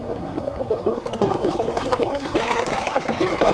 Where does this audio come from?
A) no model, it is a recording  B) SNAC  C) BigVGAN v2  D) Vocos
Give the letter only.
B